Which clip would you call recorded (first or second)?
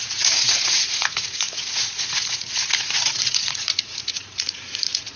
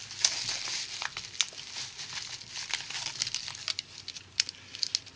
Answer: second